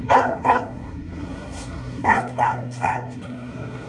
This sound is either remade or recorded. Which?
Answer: remade